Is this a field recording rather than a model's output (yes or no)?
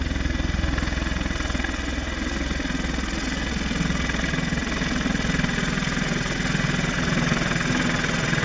yes